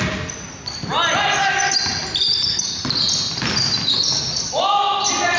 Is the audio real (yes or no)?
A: yes